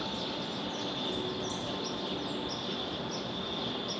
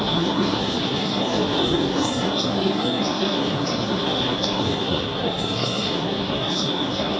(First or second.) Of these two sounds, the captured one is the first